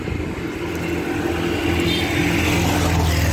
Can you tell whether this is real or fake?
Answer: real